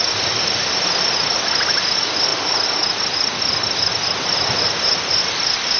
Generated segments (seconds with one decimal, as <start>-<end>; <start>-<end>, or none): none